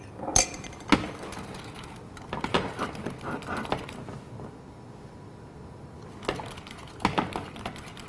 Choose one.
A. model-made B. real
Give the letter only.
B